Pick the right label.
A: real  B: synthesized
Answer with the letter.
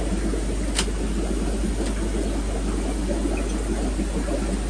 A